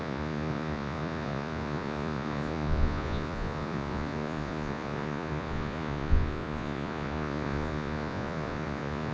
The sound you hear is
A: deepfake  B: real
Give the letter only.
A